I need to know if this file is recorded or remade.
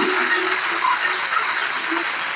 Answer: recorded